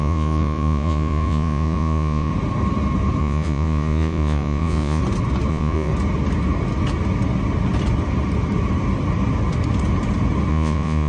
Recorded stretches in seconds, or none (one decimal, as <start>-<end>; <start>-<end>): 2.3-3.2; 5.0-5.5; 5.9-10.5